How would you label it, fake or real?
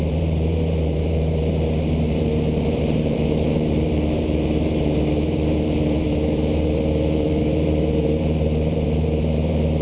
fake